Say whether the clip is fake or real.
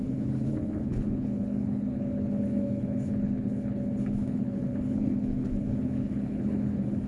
fake